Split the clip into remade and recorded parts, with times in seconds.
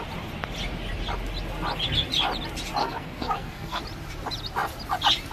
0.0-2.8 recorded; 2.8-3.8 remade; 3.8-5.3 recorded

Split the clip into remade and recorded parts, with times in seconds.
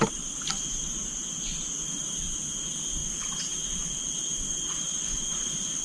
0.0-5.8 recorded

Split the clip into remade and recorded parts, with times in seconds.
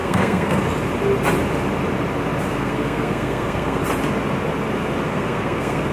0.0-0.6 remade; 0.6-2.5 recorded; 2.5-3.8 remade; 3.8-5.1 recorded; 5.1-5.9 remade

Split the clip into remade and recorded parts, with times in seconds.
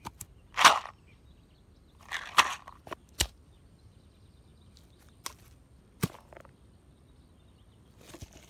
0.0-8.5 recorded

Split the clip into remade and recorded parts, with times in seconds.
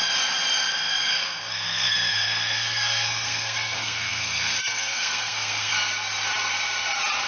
0.0-1.0 recorded; 1.0-5.7 remade; 5.7-7.3 recorded